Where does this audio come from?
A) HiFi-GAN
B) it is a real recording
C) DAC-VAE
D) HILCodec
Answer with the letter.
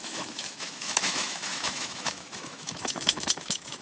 C